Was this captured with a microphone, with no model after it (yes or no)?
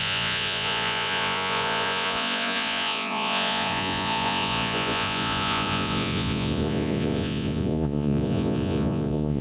no